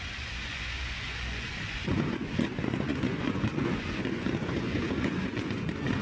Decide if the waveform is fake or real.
fake